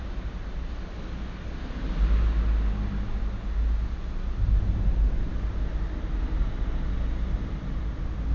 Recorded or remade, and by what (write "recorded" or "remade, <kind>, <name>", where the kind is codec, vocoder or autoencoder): recorded